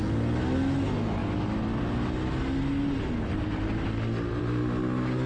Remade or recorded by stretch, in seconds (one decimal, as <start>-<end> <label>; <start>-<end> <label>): 0.0-5.3 recorded